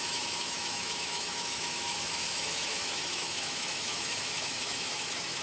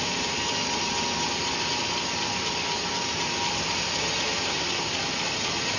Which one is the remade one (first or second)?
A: first